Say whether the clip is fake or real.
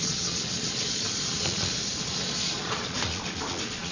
fake